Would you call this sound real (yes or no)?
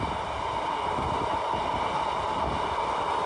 yes